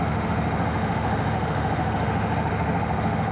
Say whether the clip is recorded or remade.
remade